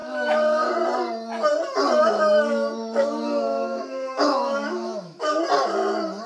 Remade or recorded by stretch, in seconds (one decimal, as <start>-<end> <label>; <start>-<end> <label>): 0.0-0.7 remade; 0.7-2.0 recorded; 2.0-5.4 remade; 5.4-6.3 recorded